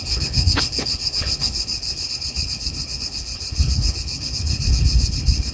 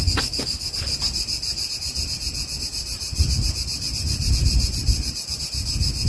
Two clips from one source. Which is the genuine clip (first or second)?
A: second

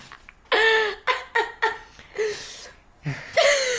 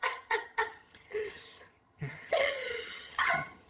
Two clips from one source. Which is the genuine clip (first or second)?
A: first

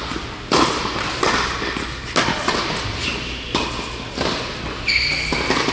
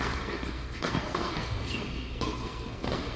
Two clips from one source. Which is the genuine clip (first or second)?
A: first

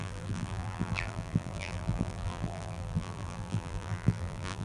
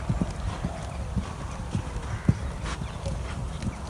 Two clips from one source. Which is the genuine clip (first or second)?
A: second